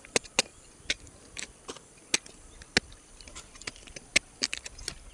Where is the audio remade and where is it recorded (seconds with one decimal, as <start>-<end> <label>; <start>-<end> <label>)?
0.0-5.1 recorded